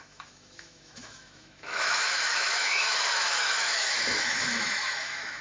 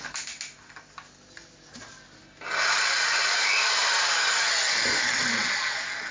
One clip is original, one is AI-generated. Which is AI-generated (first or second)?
first